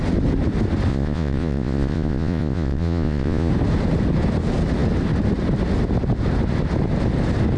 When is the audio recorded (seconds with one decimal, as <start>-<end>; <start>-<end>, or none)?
0.0-0.9; 3.5-7.6